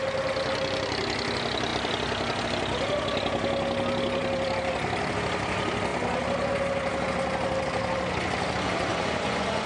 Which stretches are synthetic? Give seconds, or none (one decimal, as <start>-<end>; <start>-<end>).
8.9-9.7